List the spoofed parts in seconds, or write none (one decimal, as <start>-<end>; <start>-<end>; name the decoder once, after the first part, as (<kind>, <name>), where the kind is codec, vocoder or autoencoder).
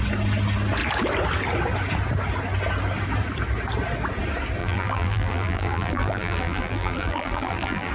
4.6-7.9 (vocoder, BigVGAN v2)